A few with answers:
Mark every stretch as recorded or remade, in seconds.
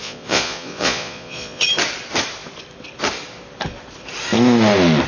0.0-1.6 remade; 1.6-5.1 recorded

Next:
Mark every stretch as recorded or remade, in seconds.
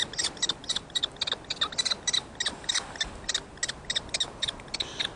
0.0-5.2 recorded